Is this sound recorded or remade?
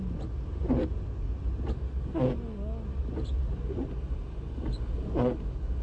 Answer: recorded